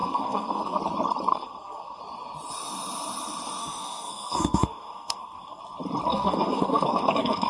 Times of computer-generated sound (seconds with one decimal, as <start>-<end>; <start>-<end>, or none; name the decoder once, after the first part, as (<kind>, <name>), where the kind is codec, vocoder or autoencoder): 0.0-0.8 (codec, SNAC); 1.3-2.0; 3.6-5.6; 6.1-7.5